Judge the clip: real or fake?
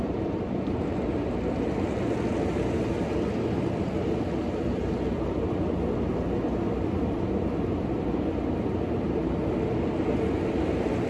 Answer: real